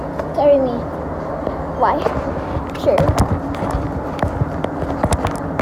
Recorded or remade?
recorded